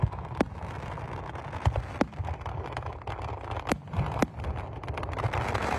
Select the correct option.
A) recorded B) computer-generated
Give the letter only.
A